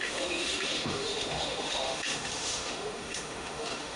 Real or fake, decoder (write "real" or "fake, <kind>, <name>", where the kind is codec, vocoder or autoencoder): fake, autoencoder, DAC-VAE